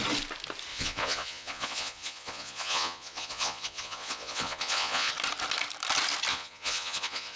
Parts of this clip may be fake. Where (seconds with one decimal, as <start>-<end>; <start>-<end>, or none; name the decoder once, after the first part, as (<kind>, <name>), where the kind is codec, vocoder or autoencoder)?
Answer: 0.7-5.1 (vocoder, Vocos); 6.3-7.4